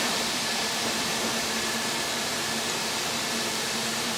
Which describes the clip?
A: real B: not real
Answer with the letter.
B